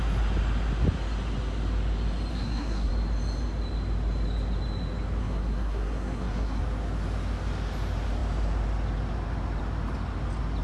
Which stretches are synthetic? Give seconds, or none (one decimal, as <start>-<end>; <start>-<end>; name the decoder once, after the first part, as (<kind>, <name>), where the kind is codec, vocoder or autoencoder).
2.3-2.9 (codec, SNAC); 5.2-6.6

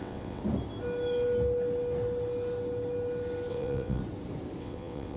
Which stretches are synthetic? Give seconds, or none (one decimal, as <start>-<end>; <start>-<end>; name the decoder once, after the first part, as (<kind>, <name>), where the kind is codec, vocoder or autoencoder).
0.0-0.4 (vocoder, WaveNeXt); 3.5-4.0; 4.6-5.2

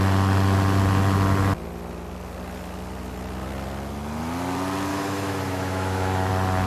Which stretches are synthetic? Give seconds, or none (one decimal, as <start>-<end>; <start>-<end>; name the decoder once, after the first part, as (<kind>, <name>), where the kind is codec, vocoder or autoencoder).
4.9-6.3 (autoencoder, DAC-VAE)

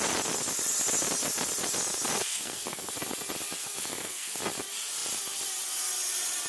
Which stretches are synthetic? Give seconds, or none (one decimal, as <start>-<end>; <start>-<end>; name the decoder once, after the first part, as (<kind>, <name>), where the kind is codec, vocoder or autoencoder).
2.2-2.9 (codec, SNAC); 3.6-4.4